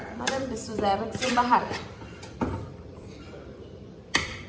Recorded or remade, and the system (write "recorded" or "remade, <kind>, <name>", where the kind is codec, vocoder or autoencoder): remade, vocoder, BigVGAN v2